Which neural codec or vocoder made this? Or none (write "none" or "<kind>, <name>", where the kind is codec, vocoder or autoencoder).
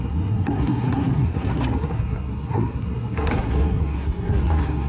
codec, SNAC